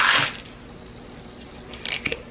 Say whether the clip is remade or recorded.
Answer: recorded